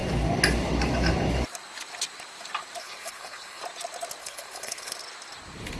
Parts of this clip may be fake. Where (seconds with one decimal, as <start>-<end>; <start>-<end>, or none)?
2.8-3.6; 4.2-4.9